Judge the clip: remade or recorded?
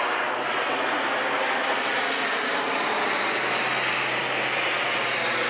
recorded